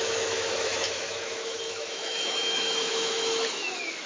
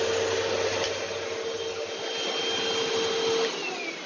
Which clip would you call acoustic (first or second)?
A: second